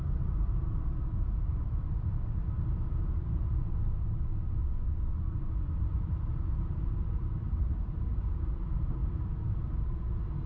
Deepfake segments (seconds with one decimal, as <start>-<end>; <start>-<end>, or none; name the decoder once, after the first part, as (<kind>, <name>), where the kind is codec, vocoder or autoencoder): 0.0-4.3 (vocoder, BigVGAN v2); 5.8-10.5